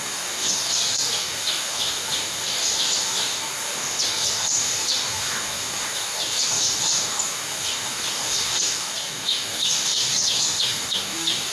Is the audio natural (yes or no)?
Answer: no